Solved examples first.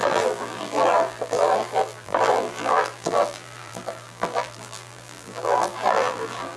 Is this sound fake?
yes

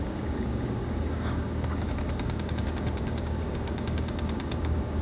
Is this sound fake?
yes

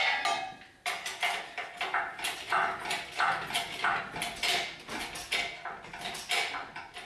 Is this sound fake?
no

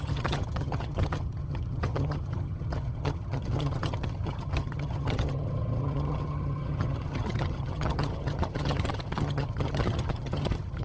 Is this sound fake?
yes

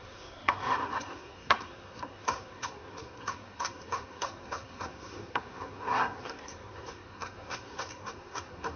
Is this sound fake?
yes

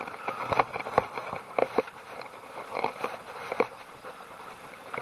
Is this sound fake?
yes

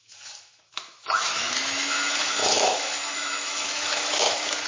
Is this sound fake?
yes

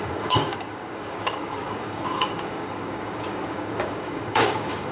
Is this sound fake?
yes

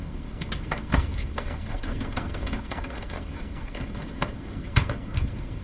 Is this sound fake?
yes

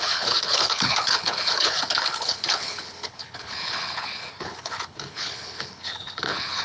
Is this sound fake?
yes